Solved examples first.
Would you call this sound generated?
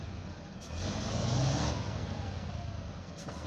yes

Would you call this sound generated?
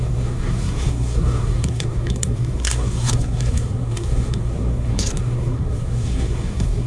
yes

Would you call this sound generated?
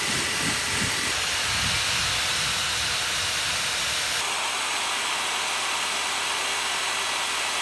no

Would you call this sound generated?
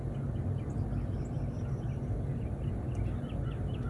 no